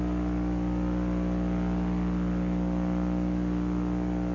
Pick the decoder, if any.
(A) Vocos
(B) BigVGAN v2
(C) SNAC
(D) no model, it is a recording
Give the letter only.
D